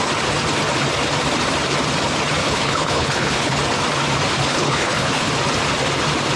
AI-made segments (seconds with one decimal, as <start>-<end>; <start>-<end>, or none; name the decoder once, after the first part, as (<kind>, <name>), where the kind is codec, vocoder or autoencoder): 2.4-3.6 (codec, HILCodec); 4.5-5.3